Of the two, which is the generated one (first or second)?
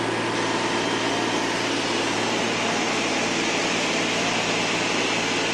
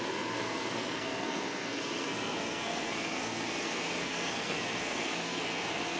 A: second